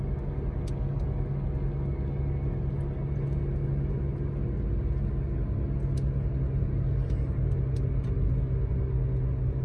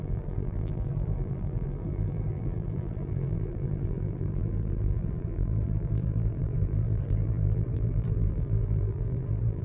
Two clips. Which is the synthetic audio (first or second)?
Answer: second